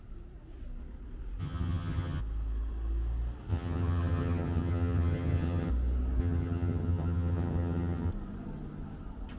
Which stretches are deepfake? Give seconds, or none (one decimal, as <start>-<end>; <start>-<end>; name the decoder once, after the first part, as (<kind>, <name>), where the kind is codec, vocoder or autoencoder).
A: 1.4-2.2 (vocoder, HiFi-GAN); 3.5-5.7; 6.2-8.1